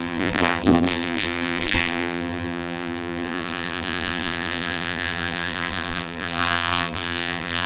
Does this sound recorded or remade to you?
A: remade